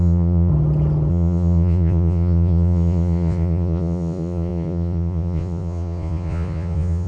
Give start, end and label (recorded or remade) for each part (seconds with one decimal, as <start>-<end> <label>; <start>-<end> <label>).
0.0-0.5 remade; 0.5-1.1 recorded; 1.1-7.1 remade